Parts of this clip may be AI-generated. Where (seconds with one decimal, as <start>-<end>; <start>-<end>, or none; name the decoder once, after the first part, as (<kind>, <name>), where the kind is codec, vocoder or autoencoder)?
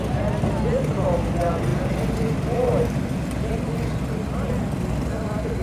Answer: none